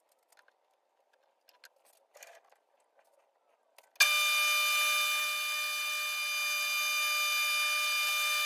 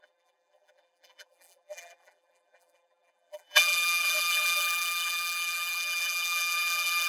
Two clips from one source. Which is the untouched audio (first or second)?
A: first